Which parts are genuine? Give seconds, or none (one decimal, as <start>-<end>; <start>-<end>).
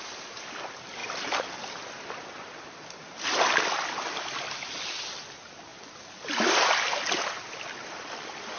0.0-8.6